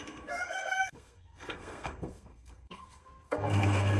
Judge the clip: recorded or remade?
remade